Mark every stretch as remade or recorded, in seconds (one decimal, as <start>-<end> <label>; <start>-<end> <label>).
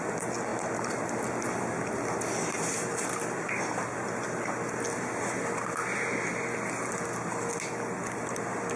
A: 0.0-8.8 recorded